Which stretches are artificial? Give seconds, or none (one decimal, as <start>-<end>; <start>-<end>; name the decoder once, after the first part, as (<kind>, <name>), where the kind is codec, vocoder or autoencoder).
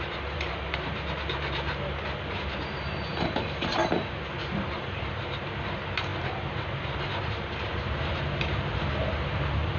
0.0-9.8 (vocoder, BigVGAN v2)